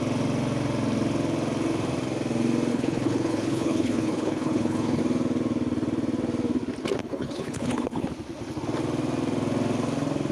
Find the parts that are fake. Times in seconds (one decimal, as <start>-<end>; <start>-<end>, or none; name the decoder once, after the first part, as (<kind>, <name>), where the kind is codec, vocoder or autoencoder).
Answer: 2.7-5.0 (codec, HILCodec); 7.0-8.1